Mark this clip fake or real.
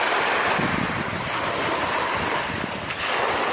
real